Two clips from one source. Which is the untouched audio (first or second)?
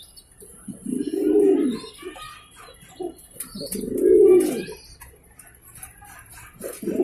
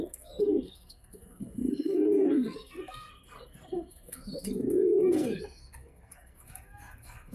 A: first